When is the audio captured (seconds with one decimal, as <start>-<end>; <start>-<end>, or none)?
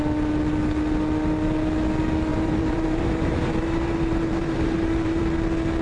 0.0-2.3; 5.2-5.8